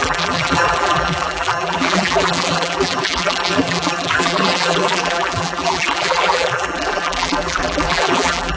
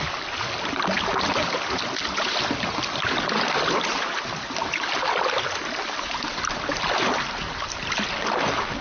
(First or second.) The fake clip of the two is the first